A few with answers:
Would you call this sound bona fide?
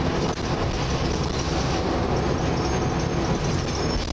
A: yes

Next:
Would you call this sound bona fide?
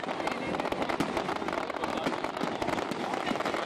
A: yes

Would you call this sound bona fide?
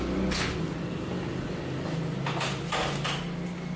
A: yes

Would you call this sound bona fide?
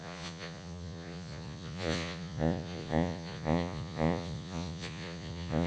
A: no